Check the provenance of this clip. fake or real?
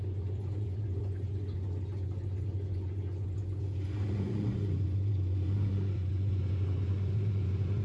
fake